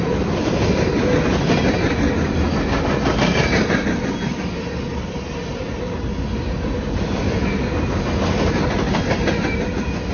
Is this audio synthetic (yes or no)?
no